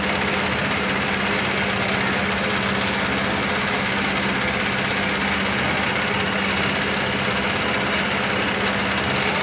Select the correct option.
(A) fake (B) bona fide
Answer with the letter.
B